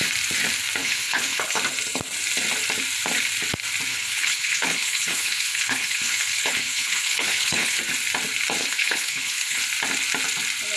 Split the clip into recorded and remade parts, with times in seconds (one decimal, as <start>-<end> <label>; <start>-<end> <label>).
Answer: 0.0-0.8 recorded; 0.8-1.6 remade; 1.6-3.9 recorded; 3.9-7.8 remade; 7.8-8.6 recorded; 8.6-9.6 remade; 9.6-10.8 recorded